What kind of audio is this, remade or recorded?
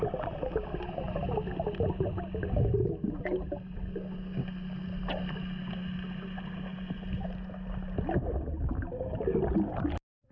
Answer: recorded